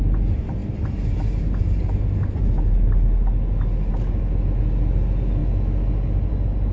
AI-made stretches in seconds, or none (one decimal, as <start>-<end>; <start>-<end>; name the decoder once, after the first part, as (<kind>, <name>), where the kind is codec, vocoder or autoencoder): none